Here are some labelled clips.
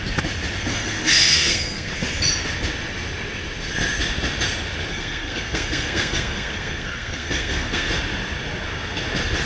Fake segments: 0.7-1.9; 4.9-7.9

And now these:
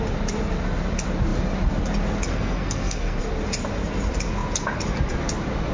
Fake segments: 2.3-3.2

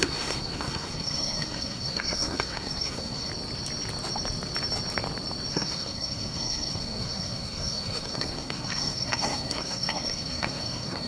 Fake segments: 0.0-3.3; 5.5-11.1

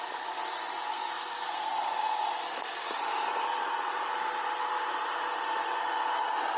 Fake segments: 0.9-2.3